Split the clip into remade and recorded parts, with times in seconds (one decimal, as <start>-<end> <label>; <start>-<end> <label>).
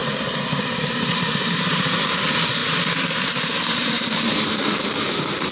0.0-0.8 recorded; 0.8-5.5 remade